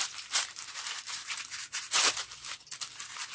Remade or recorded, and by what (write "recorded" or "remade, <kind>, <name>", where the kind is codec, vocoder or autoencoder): remade, vocoder, BigVGAN v2